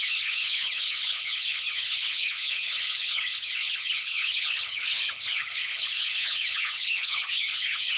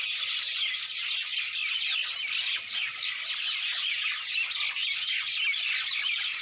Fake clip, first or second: first